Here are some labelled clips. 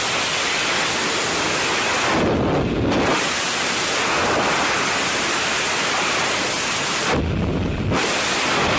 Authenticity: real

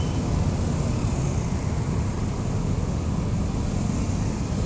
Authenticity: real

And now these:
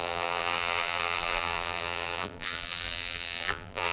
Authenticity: fake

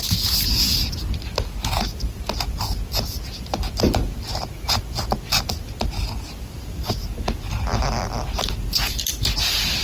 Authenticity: real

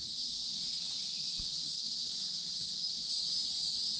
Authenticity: real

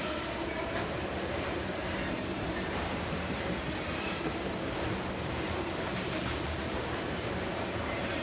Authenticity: fake